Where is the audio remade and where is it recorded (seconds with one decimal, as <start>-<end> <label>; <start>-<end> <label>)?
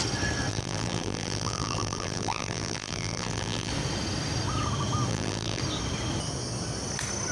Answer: 0.0-0.5 recorded; 0.5-3.7 remade; 3.7-5.1 recorded; 5.1-5.6 remade; 5.6-7.3 recorded